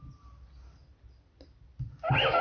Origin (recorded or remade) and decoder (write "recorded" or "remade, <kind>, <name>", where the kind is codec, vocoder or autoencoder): recorded